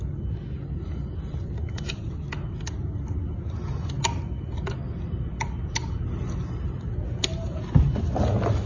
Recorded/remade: recorded